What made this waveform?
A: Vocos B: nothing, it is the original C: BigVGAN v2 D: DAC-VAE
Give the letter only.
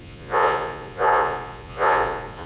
A